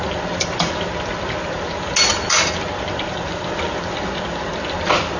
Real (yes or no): yes